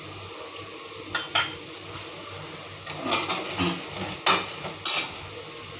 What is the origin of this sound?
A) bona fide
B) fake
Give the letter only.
A